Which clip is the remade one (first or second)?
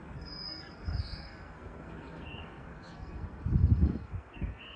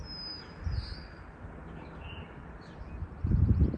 first